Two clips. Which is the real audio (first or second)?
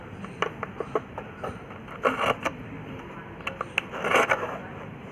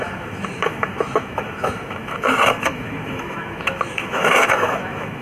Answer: first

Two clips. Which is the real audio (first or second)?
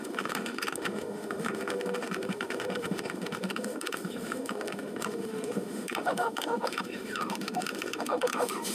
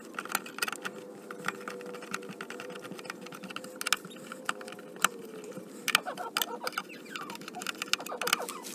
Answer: second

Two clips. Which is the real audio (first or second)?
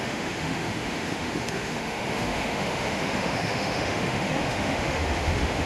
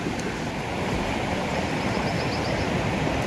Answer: second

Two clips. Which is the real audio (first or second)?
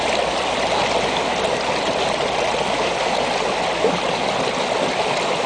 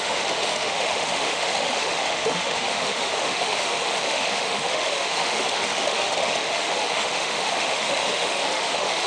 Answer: first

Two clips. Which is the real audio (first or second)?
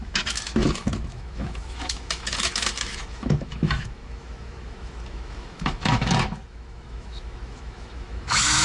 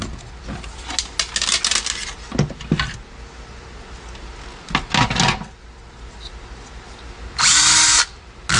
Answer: second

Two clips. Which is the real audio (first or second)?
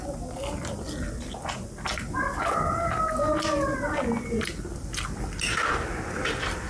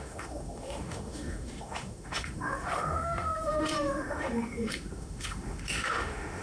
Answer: first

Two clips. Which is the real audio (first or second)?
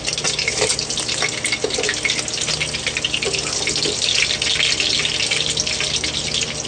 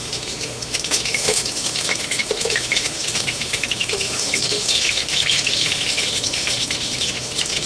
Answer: first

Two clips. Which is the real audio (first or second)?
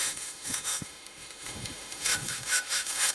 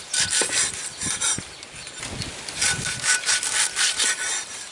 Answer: second